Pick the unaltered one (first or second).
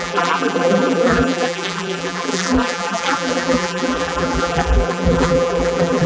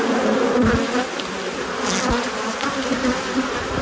second